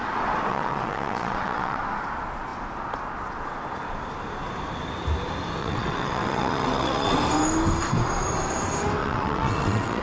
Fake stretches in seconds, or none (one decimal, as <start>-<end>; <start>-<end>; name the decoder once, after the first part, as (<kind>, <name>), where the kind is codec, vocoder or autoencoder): 0.5-1.8 (vocoder, WaveNeXt); 5.6-7.2; 9.0-10.0